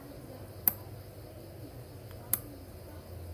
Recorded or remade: recorded